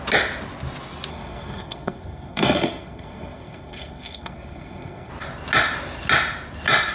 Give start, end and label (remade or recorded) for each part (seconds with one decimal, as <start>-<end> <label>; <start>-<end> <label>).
0.0-1.1 recorded; 1.1-5.1 remade; 5.1-6.9 recorded